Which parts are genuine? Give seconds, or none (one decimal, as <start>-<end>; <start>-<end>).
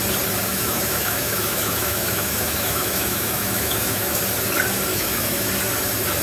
0.0-0.5; 4.2-4.9; 5.5-6.2